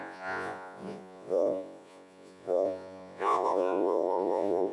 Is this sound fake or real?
fake